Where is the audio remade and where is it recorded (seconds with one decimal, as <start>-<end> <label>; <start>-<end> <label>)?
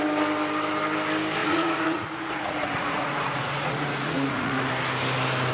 0.0-1.4 recorded; 1.4-4.7 remade; 4.7-5.5 recorded